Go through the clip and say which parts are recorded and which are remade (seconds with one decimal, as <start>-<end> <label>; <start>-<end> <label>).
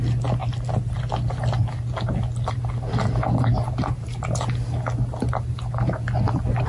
0.0-6.7 recorded